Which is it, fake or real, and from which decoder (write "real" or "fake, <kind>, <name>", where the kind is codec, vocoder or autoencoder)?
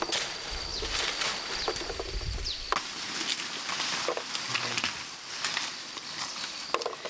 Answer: real